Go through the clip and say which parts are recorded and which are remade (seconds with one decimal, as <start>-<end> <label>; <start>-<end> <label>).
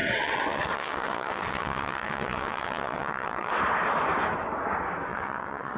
0.0-3.5 remade; 3.5-5.1 recorded; 5.1-5.8 remade